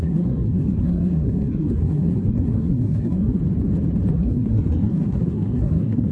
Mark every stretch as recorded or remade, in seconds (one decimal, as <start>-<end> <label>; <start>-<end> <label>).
0.0-3.4 remade; 3.4-4.1 recorded; 4.1-6.1 remade